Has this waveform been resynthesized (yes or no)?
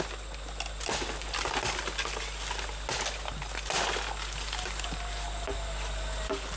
no